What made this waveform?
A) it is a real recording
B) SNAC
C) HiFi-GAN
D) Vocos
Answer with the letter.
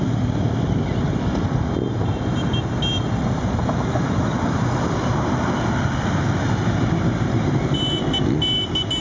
A